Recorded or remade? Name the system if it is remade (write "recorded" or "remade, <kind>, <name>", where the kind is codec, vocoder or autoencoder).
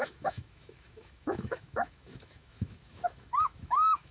remade, autoencoder, DAC-VAE